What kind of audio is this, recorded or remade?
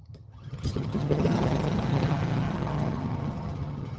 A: remade